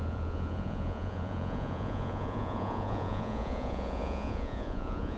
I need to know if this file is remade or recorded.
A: remade